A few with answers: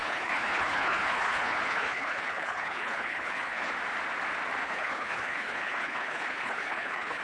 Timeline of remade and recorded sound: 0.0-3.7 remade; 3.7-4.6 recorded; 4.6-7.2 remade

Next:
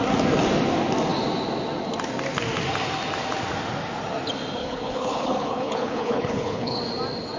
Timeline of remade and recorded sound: 0.0-4.6 recorded; 4.6-6.8 remade; 6.8-7.4 recorded

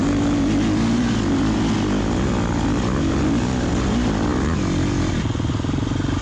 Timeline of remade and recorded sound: 0.0-6.2 recorded

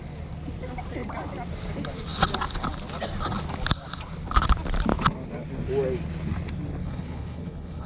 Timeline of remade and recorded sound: 0.0-6.8 recorded; 6.8-7.9 remade

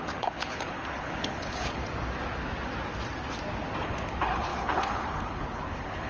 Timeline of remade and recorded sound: 0.0-1.8 remade; 1.8-3.8 recorded; 3.8-6.1 remade